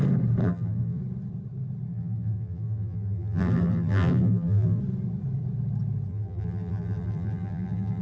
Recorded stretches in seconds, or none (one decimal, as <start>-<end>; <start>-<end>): 0.0-0.4; 1.0-1.9; 4.8-6.1